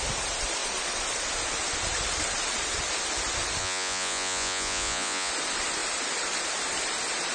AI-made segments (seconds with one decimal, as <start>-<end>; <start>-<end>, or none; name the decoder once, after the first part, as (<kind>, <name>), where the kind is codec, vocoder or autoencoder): 3.6-5.3 (vocoder, Vocos)